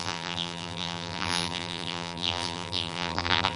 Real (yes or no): no